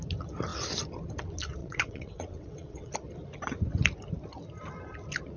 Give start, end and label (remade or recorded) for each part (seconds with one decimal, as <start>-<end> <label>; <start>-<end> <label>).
0.0-1.6 recorded; 1.6-2.9 remade; 2.9-5.4 recorded